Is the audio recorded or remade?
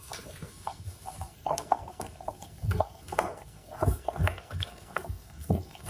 remade